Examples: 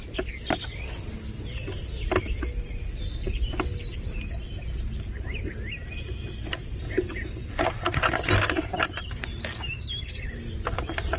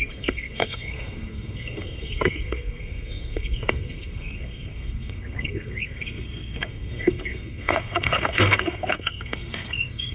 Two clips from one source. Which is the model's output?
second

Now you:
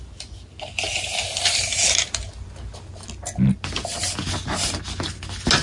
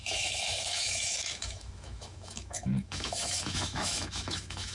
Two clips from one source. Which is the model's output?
second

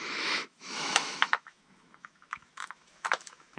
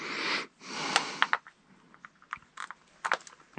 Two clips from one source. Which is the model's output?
first